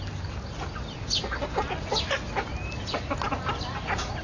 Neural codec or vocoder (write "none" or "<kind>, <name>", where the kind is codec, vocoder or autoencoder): none